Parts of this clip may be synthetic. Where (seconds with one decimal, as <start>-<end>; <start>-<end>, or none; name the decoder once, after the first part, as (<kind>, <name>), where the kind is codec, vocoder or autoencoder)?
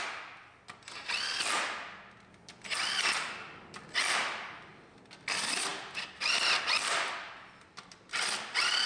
none